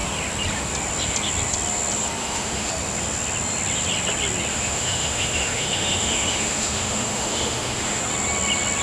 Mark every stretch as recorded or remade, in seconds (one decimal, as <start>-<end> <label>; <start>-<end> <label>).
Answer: 0.0-2.2 recorded; 2.2-2.7 remade; 2.7-4.5 recorded; 4.5-8.0 remade; 8.0-8.8 recorded